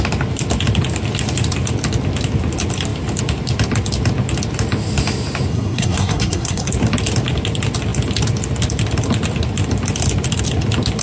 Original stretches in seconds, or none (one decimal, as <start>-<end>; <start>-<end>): 0.0-5.5; 6.7-11.0